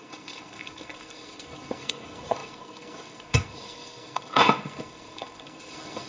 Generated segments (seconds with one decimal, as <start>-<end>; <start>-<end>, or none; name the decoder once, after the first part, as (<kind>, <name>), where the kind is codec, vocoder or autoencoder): 0.0-6.1 (codec, SNAC)